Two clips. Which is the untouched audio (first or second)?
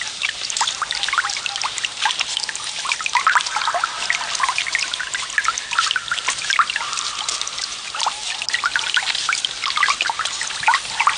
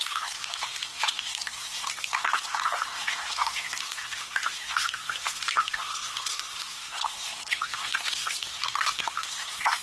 first